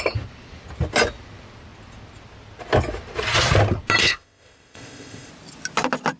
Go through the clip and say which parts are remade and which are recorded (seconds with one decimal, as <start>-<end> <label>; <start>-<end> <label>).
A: 0.0-4.0 recorded; 4.0-5.3 remade; 5.3-6.2 recorded